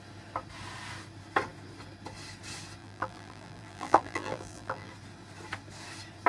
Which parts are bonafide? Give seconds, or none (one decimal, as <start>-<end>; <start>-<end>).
0.0-2.8; 4.9-6.3